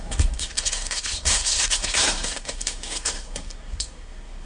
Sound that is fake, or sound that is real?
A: fake